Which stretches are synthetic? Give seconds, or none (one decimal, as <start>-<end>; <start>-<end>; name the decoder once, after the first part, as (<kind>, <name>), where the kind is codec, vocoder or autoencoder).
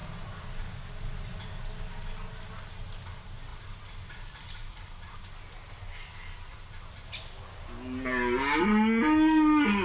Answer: none